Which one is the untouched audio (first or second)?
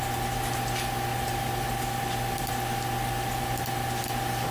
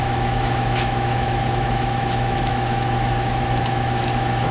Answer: first